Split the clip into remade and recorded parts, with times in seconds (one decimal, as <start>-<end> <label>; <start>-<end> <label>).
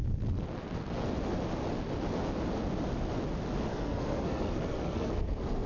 0.0-3.7 recorded; 3.7-5.7 remade